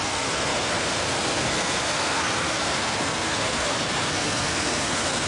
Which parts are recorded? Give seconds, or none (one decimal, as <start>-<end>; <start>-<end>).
none